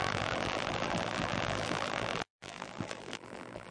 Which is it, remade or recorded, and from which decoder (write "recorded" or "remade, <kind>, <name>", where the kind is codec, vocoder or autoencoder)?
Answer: remade, vocoder, BigVGAN v2